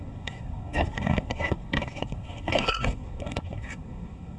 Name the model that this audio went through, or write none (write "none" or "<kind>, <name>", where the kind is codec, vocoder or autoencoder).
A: codec, SNAC